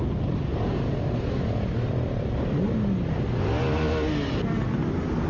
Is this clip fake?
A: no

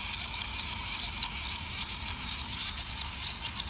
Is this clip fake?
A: no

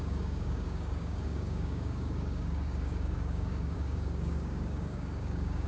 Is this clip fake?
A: yes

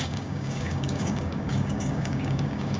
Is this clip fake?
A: yes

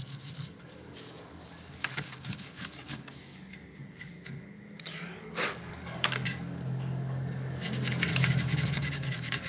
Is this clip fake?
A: yes